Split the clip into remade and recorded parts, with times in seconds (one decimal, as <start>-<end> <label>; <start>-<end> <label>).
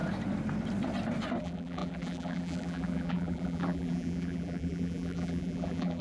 0.0-1.4 recorded; 1.4-6.0 remade